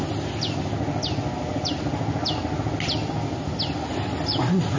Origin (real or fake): real